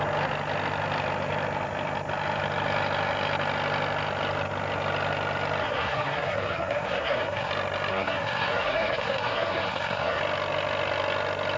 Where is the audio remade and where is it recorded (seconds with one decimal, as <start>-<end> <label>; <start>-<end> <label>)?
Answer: 0.0-5.6 recorded; 5.6-7.5 remade; 7.5-7.9 recorded; 7.9-10.2 remade; 10.2-11.6 recorded